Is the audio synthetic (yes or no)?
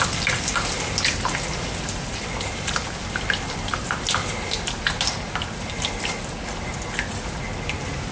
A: no